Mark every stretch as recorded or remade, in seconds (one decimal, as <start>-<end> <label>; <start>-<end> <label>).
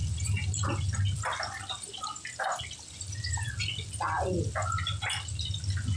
0.0-6.0 recorded